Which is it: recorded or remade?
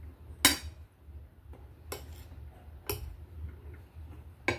recorded